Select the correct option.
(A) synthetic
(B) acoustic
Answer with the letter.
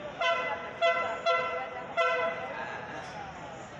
B